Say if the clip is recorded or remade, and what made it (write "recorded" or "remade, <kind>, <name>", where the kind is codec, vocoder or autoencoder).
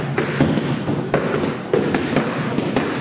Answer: recorded